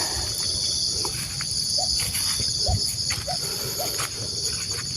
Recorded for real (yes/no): no